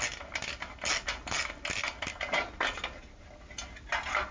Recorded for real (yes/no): yes